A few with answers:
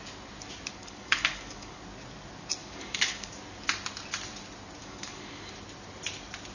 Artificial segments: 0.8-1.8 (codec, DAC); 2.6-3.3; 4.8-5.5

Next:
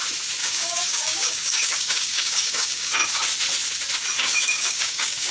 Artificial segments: 0.4-2.9 (codec, DAC); 4.2-5.3

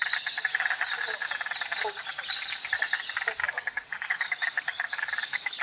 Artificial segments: 3.4-5.6 (codec, DAC)